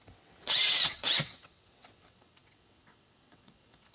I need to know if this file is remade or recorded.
remade